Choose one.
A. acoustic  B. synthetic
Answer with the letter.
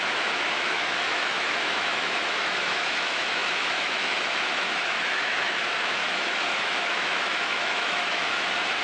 B